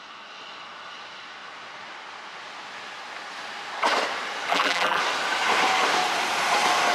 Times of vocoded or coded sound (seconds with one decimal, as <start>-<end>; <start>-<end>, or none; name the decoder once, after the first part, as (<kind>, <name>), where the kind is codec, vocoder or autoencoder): 4.5-5.0 (vocoder, BigVGAN v2)